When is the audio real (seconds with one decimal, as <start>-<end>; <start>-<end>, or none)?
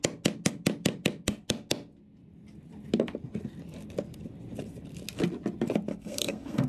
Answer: 0.0-5.9